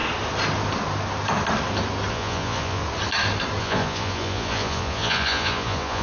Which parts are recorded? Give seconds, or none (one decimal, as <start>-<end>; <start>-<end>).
0.0-2.1; 2.8-3.6